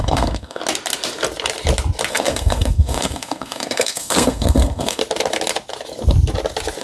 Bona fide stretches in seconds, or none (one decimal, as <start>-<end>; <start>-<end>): 0.6-2.1; 5.0-6.8